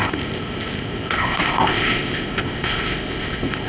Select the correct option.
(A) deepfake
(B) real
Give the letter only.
A